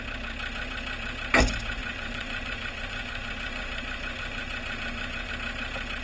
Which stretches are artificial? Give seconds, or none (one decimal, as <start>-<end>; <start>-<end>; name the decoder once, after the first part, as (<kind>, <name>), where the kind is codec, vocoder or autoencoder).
1.8-5.3 (vocoder, Vocos)